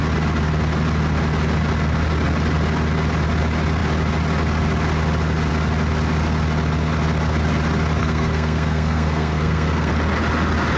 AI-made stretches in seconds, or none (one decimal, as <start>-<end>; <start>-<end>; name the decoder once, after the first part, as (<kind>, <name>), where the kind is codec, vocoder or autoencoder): 8.0-9.9 (codec, SNAC)